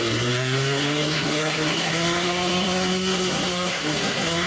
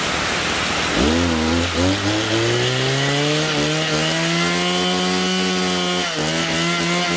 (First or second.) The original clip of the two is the second